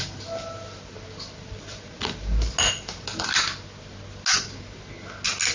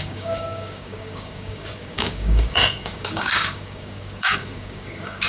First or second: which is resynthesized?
second